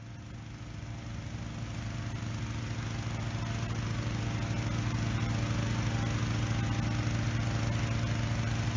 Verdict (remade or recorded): recorded